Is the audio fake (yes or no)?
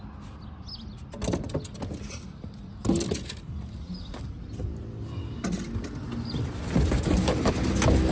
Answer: no